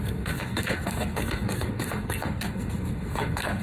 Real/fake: fake